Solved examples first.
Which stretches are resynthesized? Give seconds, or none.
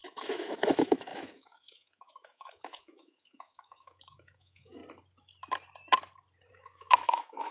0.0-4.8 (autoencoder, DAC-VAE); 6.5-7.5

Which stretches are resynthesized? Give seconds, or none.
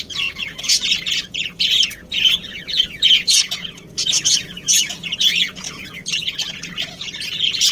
0.0-7.7 (vocoder, Vocos)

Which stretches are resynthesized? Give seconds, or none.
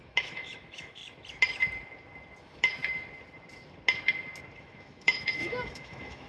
0.0-1.0 (autoencoder, DAC-VAE); 2.4-2.8; 4.6-6.3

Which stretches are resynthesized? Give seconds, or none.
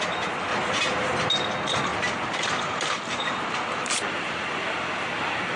0.5-1.3 (vocoder, BigVGAN v2); 1.9-4.4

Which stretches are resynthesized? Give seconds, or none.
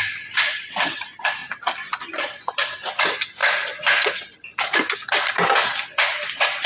none